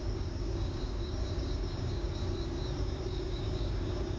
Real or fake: fake